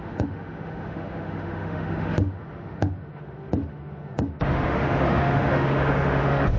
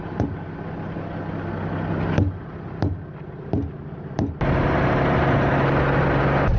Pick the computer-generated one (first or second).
first